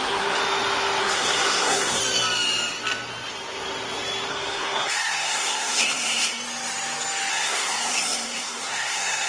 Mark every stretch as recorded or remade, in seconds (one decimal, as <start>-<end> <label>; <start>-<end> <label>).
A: 0.0-0.4 remade; 0.4-1.0 recorded; 1.0-2.0 remade; 2.0-4.3 recorded; 4.3-6.4 remade; 6.4-7.3 recorded; 7.3-9.3 remade